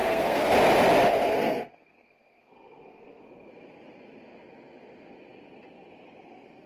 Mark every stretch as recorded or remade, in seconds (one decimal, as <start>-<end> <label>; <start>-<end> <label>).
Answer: 0.0-0.5 remade; 0.5-1.1 recorded; 1.1-3.2 remade; 3.2-6.7 recorded